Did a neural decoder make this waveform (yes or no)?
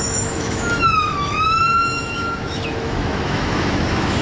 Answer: yes